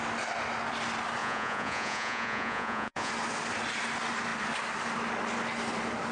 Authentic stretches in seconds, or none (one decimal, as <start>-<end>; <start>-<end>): 0.0-1.2; 3.1-6.1